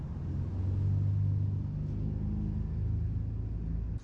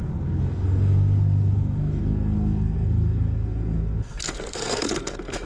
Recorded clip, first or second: first